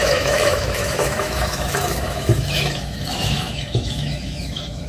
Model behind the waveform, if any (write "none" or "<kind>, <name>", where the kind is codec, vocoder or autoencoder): autoencoder, DAC-VAE